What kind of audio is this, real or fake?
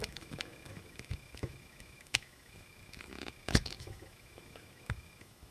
fake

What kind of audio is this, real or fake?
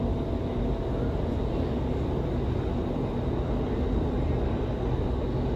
real